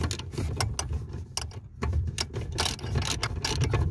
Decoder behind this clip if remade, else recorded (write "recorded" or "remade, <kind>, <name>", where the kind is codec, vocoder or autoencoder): recorded